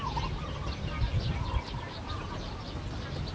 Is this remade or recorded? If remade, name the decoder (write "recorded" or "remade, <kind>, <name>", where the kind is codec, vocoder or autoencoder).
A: recorded